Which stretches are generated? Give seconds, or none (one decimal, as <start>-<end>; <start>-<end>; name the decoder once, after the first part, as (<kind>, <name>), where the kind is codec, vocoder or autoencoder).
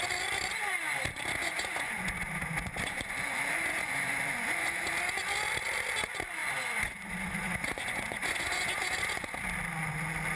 1.4-4.9 (vocoder, Vocos); 6.4-9.3